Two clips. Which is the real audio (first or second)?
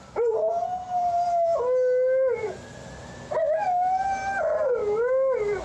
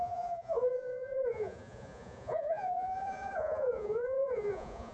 first